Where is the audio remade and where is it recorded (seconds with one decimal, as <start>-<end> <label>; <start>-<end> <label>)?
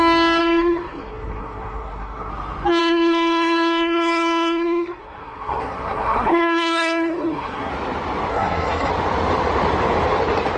0.0-0.4 recorded; 0.4-2.3 remade; 2.3-2.8 recorded; 2.8-7.7 remade; 7.7-8.3 recorded; 8.3-8.9 remade; 8.9-10.6 recorded